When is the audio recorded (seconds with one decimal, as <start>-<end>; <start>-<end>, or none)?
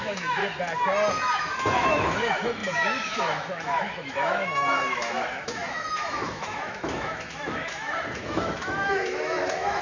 0.4-1.1